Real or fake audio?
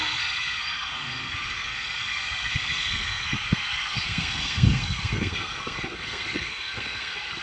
fake